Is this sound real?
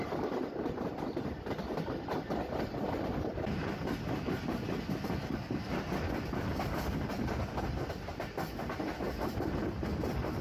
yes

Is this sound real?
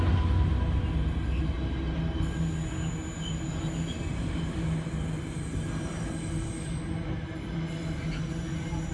yes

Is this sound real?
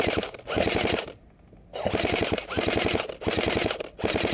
yes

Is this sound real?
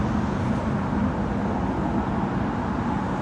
yes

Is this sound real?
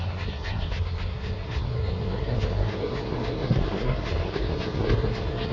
no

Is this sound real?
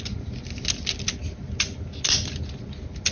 yes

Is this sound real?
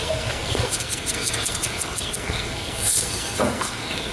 no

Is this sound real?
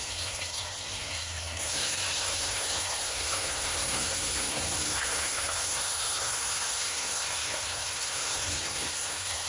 no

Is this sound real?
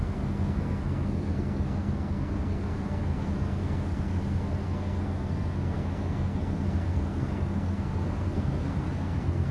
no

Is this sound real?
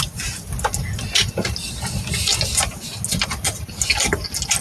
yes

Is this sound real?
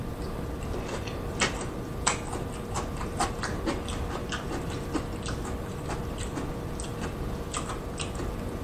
yes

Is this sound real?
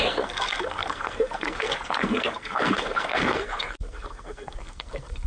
no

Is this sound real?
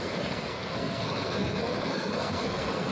no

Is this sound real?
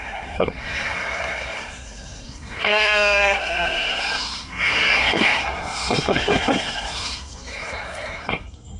no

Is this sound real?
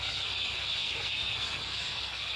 no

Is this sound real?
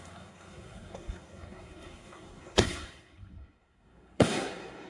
no